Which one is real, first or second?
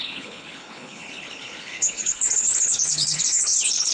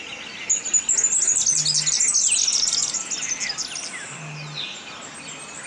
second